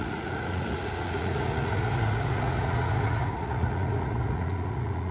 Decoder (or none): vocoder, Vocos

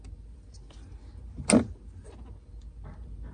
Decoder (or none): none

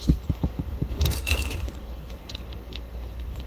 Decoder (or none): codec, SNAC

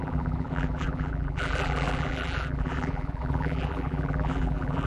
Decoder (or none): vocoder, BigVGAN v2